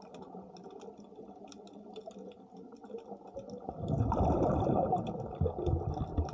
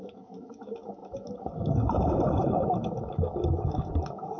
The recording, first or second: first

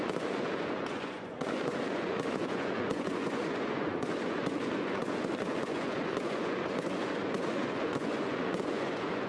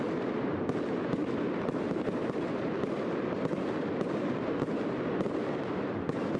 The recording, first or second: second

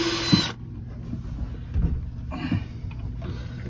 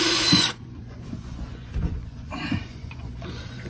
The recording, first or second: first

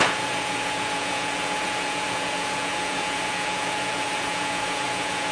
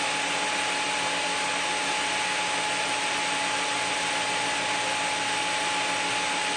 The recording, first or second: second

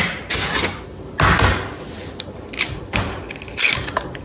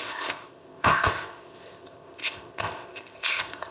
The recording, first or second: first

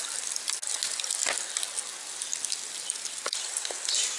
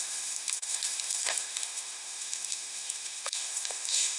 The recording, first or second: first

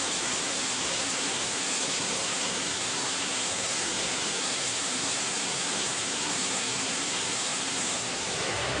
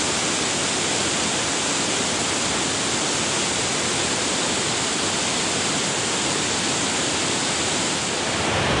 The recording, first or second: second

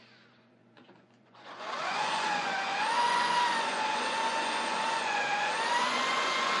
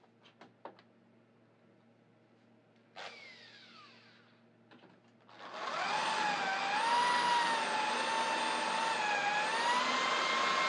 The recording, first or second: second